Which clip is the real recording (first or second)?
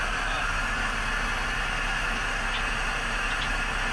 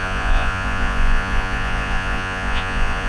first